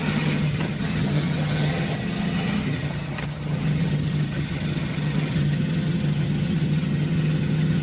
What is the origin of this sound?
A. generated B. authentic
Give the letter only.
A